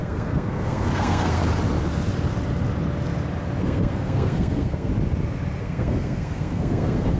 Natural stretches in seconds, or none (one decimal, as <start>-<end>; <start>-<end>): 1.4-3.6; 4.9-5.6